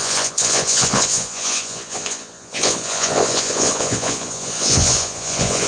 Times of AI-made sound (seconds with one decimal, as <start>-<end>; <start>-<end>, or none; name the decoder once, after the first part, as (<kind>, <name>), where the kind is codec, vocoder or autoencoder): 0.0-5.7 (vocoder, Vocos)